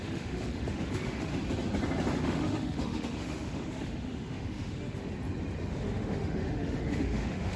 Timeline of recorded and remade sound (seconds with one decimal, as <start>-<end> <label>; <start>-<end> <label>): 0.0-1.3 remade; 1.3-2.2 recorded; 2.2-5.1 remade; 5.1-5.7 recorded; 5.7-7.6 remade